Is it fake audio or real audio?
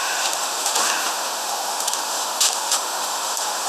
fake